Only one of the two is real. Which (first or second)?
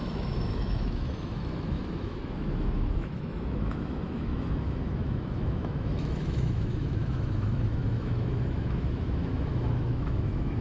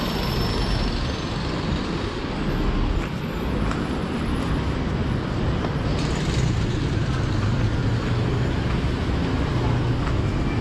second